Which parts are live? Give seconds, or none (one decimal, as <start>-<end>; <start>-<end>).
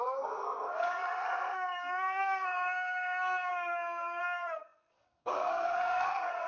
none